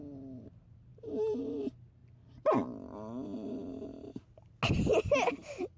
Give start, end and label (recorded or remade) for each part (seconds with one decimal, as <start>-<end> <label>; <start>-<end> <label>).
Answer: 0.0-0.9 recorded; 0.9-1.6 remade; 1.6-4.9 recorded; 4.9-5.8 remade